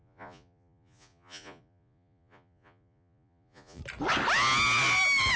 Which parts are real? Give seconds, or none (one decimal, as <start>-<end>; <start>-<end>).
3.8-5.4